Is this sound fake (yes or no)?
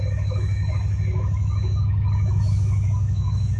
yes